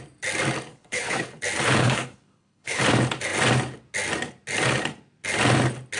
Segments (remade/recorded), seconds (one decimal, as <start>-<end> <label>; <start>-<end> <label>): 0.0-0.7 recorded; 0.7-1.4 remade; 1.4-1.8 recorded; 1.8-2.8 remade; 2.8-6.0 recorded